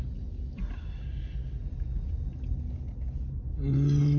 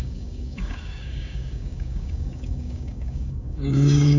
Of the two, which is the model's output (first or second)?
second